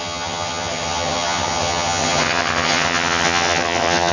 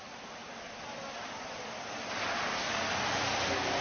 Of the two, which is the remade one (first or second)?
first